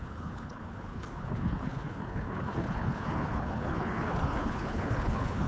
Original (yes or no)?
no